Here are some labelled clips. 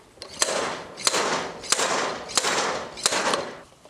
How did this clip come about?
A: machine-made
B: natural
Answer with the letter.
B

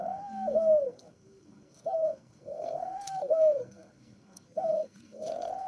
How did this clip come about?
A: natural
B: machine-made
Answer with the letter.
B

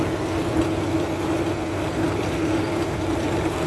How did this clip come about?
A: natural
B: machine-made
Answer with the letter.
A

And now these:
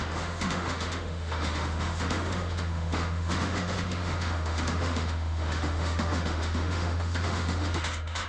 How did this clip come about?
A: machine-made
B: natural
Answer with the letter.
A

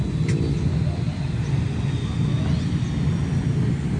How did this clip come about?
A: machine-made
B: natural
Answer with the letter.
B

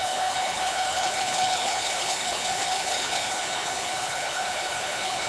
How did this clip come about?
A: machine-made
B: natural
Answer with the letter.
A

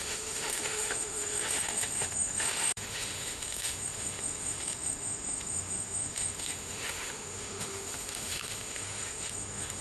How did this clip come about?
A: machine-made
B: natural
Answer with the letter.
A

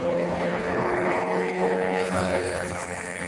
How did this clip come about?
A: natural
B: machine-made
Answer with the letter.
B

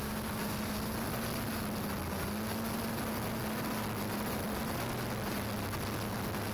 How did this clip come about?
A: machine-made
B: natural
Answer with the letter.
B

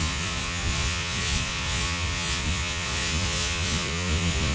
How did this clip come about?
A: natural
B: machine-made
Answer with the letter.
B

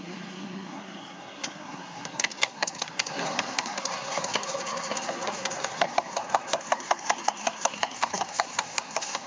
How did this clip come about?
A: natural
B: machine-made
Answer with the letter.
B